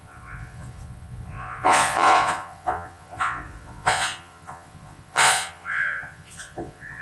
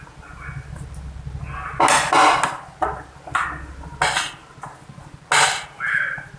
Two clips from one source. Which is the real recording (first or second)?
second